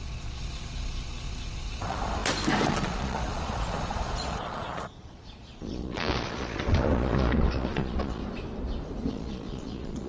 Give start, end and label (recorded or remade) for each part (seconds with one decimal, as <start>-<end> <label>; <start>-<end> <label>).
0.0-2.2 remade; 2.2-2.7 recorded; 2.7-8.2 remade; 8.2-9.1 recorded; 9.1-10.1 remade